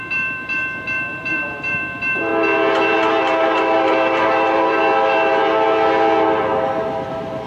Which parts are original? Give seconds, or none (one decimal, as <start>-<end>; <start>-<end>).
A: 2.3-3.1; 4.8-7.1